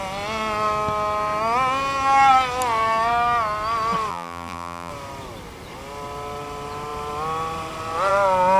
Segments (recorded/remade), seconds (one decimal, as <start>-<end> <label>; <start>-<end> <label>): 0.0-4.1 recorded; 4.1-4.9 remade; 4.9-8.6 recorded